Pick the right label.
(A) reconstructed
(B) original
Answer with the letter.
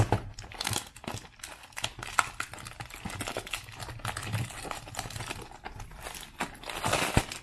B